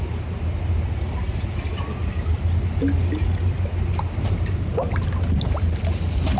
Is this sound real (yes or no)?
yes